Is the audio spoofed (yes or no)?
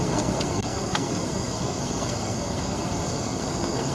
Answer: yes